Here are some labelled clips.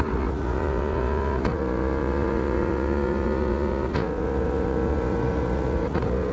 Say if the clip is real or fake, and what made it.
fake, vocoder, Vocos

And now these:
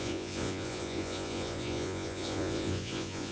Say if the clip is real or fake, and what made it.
fake, vocoder, Vocos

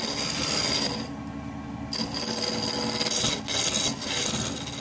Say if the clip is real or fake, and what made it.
real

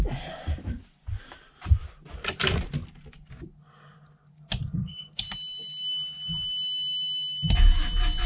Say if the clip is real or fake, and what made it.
real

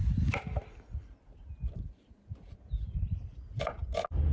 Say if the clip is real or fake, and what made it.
real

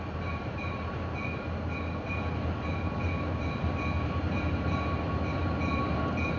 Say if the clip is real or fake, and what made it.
real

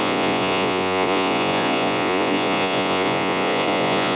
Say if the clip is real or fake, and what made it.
fake, vocoder, Vocos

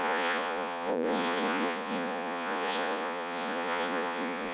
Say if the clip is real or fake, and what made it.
fake, vocoder, Vocos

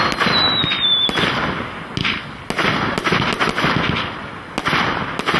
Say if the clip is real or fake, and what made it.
real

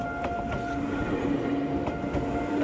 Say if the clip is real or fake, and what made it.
real